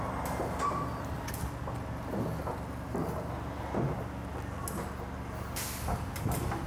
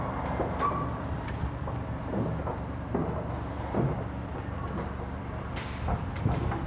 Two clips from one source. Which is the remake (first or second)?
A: second